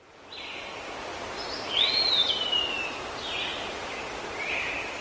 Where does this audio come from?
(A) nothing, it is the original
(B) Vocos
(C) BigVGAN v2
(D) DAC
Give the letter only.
A